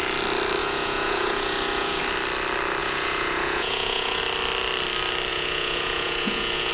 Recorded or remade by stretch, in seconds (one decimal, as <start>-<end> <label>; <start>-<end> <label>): 0.0-0.6 recorded; 0.6-2.0 remade; 2.0-2.8 recorded; 2.8-4.2 remade; 4.2-5.3 recorded; 5.3-6.7 remade

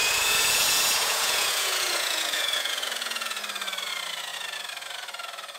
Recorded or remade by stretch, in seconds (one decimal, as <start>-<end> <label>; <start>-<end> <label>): 0.0-3.4 remade; 3.4-5.6 recorded

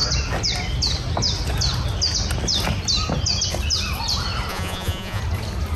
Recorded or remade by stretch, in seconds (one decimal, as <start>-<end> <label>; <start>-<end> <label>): 0.0-4.5 recorded; 4.5-5.2 remade; 5.2-5.8 recorded